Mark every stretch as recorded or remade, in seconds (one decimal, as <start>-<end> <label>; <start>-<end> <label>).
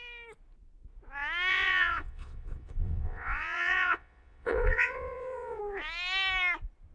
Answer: 0.0-1.5 recorded; 1.5-5.6 remade; 5.6-6.9 recorded